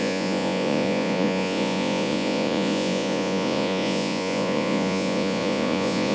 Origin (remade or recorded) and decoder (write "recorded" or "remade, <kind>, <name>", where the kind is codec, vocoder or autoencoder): remade, vocoder, Vocos